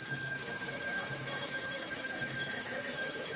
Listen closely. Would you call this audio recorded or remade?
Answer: remade